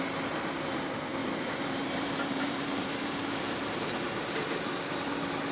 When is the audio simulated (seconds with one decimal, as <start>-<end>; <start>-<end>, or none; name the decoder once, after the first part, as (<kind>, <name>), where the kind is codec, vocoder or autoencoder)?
1.2-4.5 (vocoder, BigVGAN v2)